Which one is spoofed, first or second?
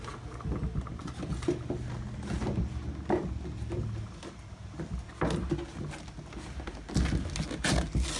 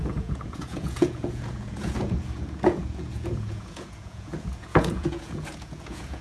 second